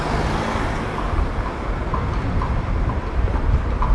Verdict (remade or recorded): recorded